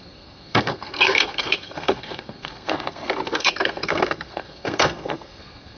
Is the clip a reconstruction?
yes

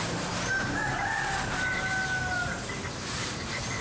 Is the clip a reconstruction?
no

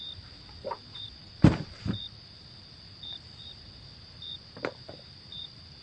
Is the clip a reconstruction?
yes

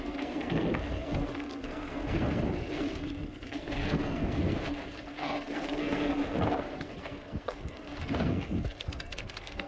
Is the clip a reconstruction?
yes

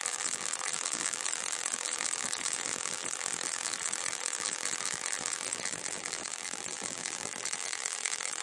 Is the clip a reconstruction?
yes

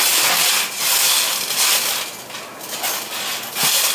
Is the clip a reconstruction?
no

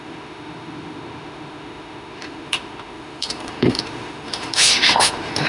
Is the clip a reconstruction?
yes